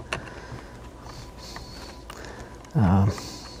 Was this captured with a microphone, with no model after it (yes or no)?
yes